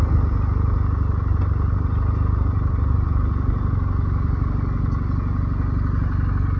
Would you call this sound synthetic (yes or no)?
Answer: no